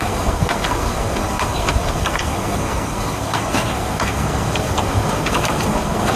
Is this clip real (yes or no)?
no